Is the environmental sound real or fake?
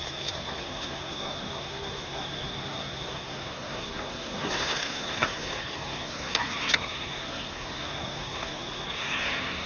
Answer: fake